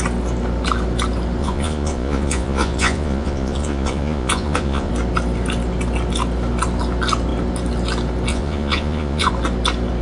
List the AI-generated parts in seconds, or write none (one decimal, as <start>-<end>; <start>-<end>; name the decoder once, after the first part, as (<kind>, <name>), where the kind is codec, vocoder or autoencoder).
1.4-4.9 (vocoder, Vocos); 8.3-9.3